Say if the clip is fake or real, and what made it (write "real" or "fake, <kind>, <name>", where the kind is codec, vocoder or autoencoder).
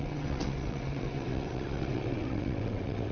fake, vocoder, WaveNeXt